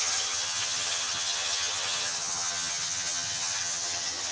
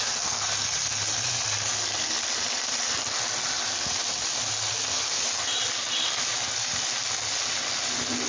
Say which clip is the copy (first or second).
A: first